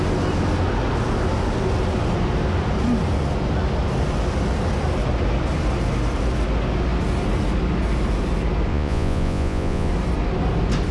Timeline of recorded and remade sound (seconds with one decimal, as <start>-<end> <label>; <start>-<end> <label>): 0.0-8.7 recorded; 8.7-9.9 remade; 9.9-10.9 recorded

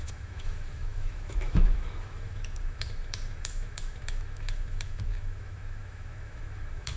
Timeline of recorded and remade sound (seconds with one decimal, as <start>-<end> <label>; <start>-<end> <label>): 0.0-7.0 remade

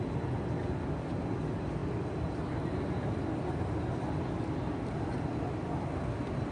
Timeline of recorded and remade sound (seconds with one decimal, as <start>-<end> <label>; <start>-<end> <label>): 0.0-6.5 recorded